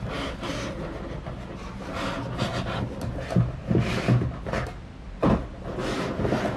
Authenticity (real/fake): real